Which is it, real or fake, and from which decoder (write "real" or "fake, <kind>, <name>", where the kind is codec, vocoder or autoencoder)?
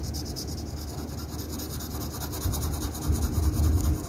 real